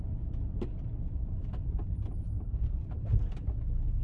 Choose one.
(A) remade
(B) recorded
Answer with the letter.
B